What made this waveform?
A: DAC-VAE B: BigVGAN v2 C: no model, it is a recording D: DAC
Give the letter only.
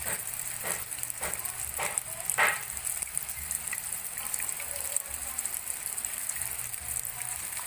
B